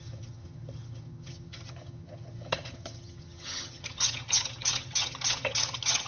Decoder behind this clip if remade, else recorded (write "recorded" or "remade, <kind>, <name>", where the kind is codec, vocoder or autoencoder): remade, vocoder, HiFi-GAN